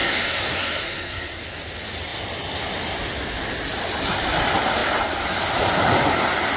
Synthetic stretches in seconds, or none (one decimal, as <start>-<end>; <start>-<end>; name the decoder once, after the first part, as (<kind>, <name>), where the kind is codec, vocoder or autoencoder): 0.0-1.4 (codec, SNAC)